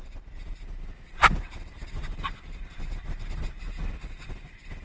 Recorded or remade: remade